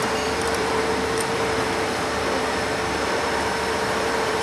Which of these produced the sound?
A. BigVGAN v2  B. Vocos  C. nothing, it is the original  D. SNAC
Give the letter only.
A